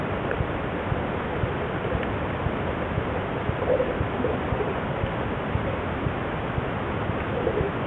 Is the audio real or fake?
real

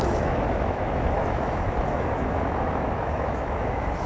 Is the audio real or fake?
fake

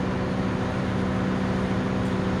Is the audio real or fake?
real